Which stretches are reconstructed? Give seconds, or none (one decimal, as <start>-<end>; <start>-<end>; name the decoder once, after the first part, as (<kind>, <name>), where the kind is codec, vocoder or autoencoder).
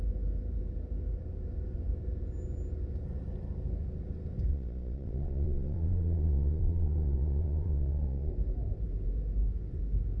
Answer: 4.5-8.3 (vocoder, Vocos)